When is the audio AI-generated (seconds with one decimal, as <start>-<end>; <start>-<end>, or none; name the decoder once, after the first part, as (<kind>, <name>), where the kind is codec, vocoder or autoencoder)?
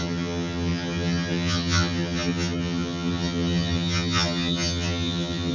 0.0-5.5 (vocoder, HiFi-GAN)